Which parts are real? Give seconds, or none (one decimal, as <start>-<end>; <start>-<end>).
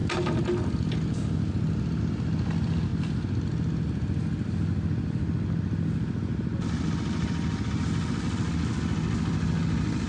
0.0-10.1